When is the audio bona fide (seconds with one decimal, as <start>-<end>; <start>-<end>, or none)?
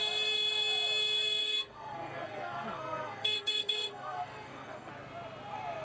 0.0-1.4; 4.9-5.8